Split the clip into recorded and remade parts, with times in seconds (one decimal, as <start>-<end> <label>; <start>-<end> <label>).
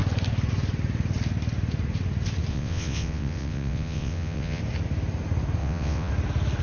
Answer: 0.0-2.5 recorded; 2.5-4.6 remade; 4.6-5.6 recorded; 5.6-6.1 remade; 6.1-6.6 recorded